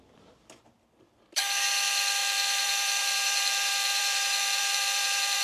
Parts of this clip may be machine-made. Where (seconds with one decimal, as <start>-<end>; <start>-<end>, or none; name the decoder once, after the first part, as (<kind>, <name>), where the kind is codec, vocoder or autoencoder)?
2.2-5.4 (vocoder, BigVGAN v2)